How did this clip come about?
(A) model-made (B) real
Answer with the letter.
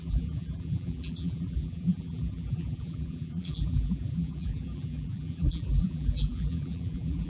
A